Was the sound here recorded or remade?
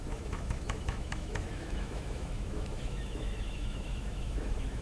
remade